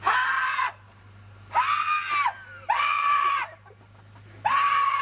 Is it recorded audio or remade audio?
recorded